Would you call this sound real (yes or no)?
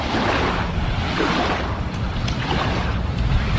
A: yes